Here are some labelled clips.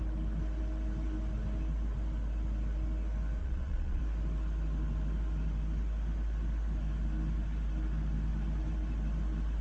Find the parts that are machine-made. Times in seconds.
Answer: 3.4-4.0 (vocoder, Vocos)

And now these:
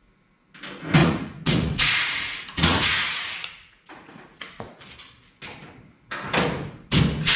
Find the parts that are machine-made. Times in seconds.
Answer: 1.0-4.8 (vocoder, Vocos)

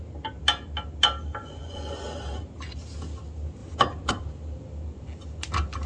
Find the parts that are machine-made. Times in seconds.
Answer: 1.4-2.0 (vocoder, Vocos)

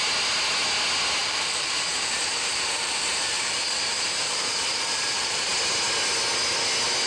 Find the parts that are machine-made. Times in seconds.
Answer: 1.2-5.5 (vocoder, BigVGAN v2)

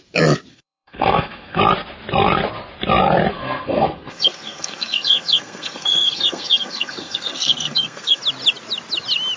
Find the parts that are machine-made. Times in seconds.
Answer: 0.5-1.6 (codec, SNAC); 3.3-8.2

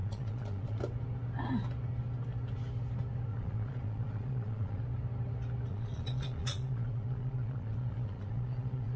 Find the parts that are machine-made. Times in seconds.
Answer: 0.0-0.8 (vocoder, Vocos); 3.3-4.8; 5.7-9.0

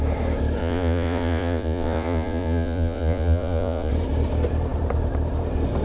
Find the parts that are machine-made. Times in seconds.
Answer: 0.6-3.9 (vocoder, Vocos)